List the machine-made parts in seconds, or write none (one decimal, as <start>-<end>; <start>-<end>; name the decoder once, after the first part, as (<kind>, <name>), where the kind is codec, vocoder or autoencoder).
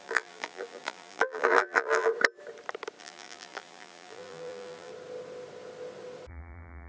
0.0-2.1 (vocoder, BigVGAN v2); 3.0-4.9; 6.3-6.9